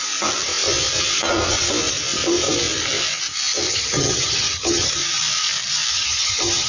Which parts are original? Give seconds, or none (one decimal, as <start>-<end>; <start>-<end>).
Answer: 0.0-3.7; 4.9-5.9